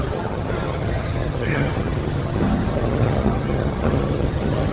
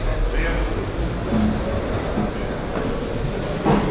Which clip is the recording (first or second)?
second